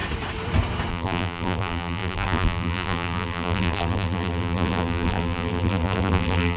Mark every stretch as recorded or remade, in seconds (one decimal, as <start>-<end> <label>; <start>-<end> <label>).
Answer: 0.0-0.9 recorded; 0.9-6.6 remade